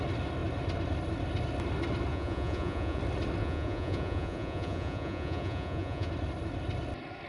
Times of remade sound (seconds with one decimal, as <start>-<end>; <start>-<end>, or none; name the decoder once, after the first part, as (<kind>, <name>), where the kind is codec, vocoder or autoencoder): 2.1-3.0 (vocoder, Vocos); 3.4-6.1